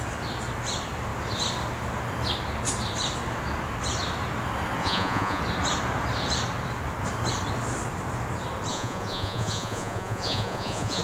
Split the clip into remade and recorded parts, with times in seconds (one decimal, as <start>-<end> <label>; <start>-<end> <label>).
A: 0.0-4.8 recorded; 4.8-5.4 remade; 5.4-8.7 recorded; 8.7-11.0 remade